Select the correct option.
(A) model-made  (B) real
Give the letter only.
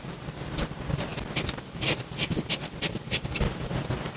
B